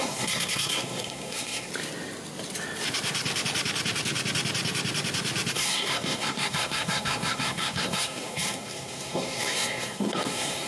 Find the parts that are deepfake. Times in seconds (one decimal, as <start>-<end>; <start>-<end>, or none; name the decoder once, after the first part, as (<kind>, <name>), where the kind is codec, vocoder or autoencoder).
0.0-1.7 (codec, SNAC); 5.5-10.7